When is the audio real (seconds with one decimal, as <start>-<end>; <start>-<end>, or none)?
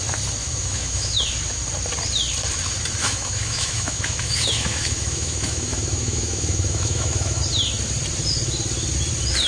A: 0.0-0.4; 1.2-3.0; 7.4-9.5